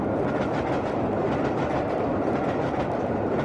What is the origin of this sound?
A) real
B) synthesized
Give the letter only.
A